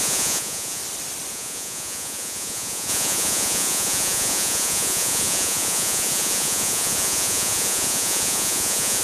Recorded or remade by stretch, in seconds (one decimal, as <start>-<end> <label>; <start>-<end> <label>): 0.0-0.8 remade; 0.8-1.3 recorded; 1.3-9.0 remade